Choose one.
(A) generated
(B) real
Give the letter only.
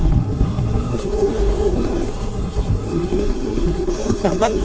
A